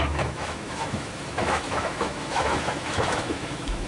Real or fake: fake